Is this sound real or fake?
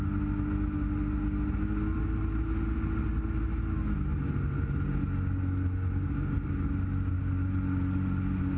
real